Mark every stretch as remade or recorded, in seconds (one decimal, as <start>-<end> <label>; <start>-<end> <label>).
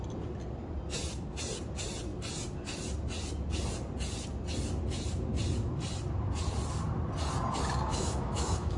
0.0-7.9 recorded; 7.9-8.8 remade